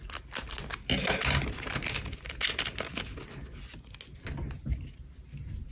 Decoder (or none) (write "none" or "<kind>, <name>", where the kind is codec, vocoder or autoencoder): none